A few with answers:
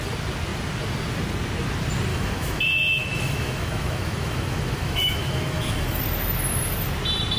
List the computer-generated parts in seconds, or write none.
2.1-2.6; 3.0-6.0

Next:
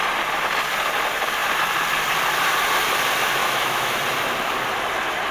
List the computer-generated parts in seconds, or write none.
3.4-4.0

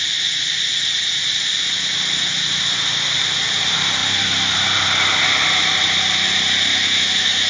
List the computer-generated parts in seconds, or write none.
6.7-7.5

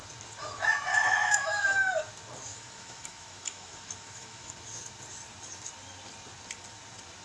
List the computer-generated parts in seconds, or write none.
0.9-2.0; 2.5-4.5

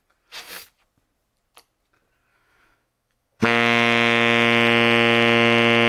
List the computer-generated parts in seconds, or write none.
2.3-5.9

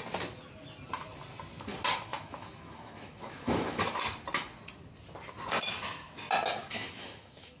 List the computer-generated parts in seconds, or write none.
2.1-3.8; 6.6-7.6